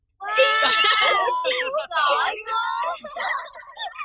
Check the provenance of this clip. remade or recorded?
recorded